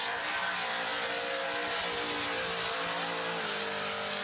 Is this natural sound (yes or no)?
yes